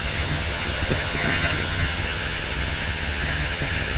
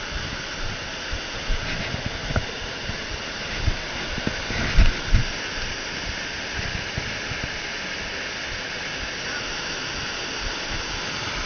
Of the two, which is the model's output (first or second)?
first